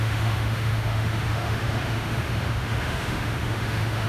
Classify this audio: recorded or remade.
remade